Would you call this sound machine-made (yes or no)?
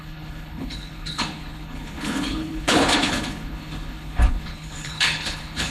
yes